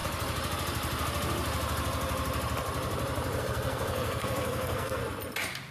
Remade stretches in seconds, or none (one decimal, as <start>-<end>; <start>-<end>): 3.4-5.0